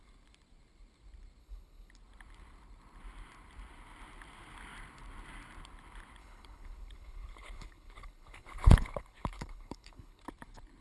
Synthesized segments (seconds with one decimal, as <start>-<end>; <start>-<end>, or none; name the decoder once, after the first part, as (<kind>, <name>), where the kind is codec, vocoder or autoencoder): 1.4-1.9 (codec, HILCodec); 6.2-10.2